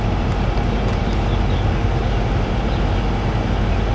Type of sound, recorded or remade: recorded